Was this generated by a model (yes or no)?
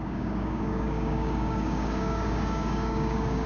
yes